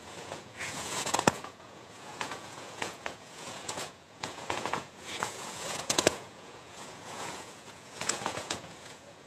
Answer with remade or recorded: remade